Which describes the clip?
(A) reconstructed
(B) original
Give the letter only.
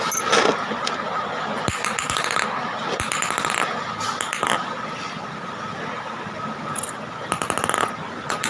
B